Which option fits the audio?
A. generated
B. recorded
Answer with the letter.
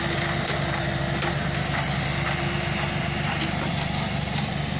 B